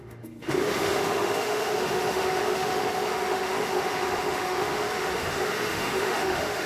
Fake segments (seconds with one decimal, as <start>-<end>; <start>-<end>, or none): 0.0-6.7